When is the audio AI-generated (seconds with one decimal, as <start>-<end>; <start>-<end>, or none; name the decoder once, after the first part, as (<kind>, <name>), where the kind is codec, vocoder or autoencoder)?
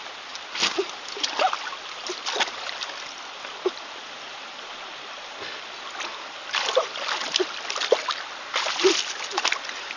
none